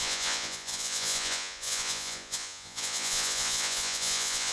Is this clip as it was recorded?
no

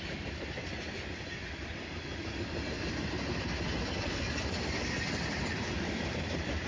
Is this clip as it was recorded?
yes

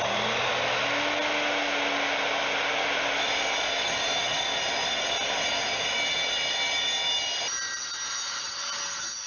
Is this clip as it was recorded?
yes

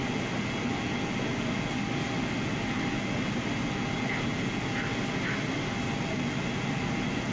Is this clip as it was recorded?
yes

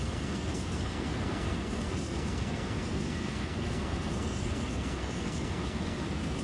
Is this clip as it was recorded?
no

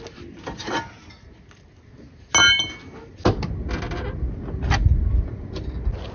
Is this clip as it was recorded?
yes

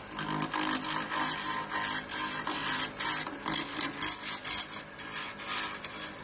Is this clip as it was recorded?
yes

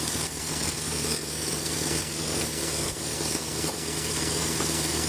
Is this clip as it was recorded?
no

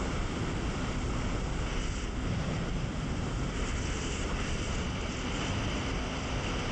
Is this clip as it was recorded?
yes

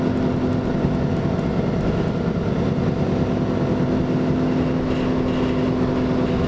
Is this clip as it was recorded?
yes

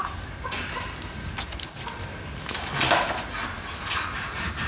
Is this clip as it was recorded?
yes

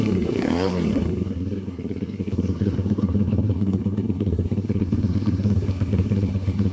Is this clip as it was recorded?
no